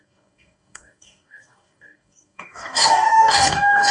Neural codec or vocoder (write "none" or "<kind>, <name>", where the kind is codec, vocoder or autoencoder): codec, DAC